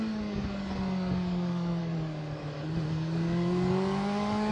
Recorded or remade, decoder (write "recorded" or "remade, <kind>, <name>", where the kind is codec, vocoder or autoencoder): remade, codec, DAC